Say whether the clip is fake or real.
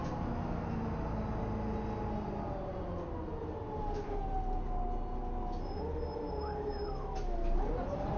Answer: real